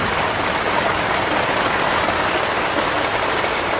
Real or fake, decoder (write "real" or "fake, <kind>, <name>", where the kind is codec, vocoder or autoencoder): real